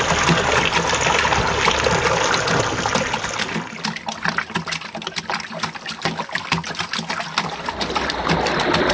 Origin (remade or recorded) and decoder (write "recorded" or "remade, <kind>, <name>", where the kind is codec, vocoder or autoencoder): recorded